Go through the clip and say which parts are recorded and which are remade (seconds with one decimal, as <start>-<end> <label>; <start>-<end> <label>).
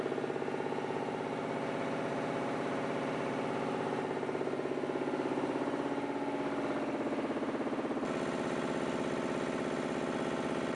0.0-2.1 recorded; 2.1-3.4 remade; 3.4-10.8 recorded